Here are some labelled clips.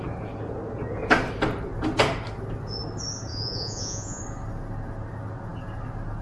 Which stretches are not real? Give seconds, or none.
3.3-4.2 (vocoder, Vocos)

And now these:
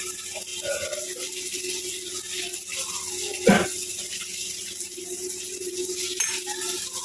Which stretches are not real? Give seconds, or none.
none

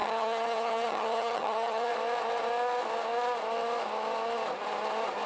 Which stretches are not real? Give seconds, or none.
0.0-1.9 (vocoder, HiFi-GAN)

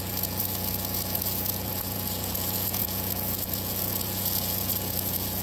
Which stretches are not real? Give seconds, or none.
0.0-5.4 (vocoder, Vocos)

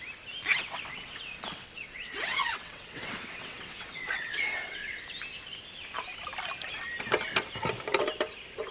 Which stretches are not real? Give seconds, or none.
0.5-5.0 (vocoder, WaveNeXt)

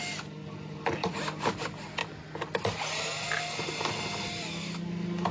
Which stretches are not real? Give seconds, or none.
none

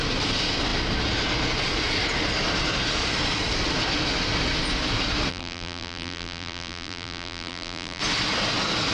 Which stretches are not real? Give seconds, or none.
5.3-8.0 (vocoder, BigVGAN v2)